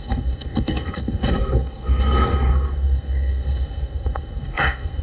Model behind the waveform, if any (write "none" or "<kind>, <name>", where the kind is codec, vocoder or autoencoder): codec, SNAC